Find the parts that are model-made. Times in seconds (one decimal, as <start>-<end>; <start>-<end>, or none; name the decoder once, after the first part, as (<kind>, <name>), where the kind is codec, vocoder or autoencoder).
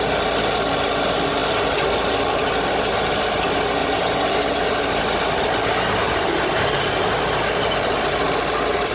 3.8-5.0 (vocoder, BigVGAN v2); 6.0-7.7